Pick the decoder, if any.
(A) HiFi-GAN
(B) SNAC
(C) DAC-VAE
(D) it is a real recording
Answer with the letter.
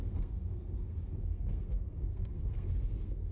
B